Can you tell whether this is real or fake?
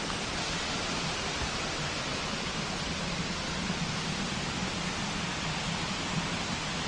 real